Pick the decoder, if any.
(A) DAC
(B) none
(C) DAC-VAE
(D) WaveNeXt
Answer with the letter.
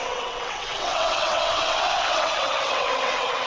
D